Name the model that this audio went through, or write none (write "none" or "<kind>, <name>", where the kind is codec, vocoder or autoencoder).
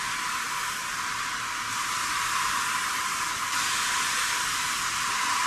none